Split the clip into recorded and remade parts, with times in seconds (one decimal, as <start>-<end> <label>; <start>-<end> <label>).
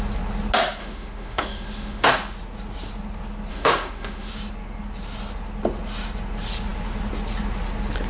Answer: 0.0-0.8 recorded; 0.8-2.1 remade; 2.1-3.5 recorded; 3.5-4.3 remade; 4.3-8.1 recorded